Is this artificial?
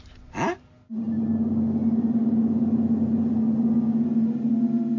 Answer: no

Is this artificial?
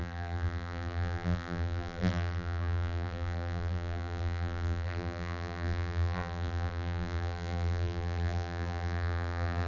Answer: yes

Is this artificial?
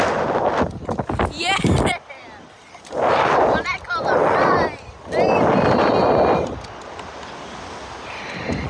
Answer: no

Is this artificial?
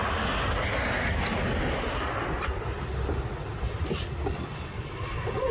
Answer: no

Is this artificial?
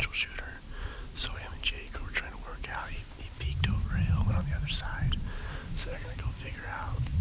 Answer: yes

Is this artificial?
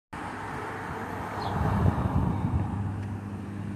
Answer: no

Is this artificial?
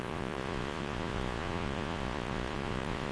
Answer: yes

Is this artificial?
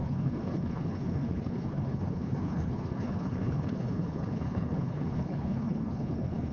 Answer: yes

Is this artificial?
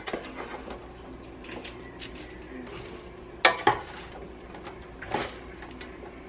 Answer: no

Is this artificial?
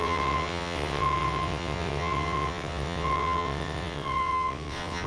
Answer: yes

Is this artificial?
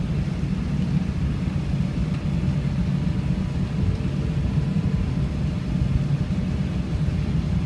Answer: no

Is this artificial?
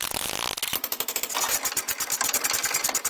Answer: no